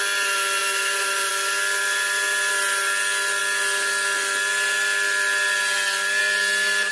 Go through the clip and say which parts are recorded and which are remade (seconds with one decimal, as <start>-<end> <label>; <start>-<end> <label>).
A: 0.0-0.6 recorded; 0.6-1.3 remade; 1.3-6.9 recorded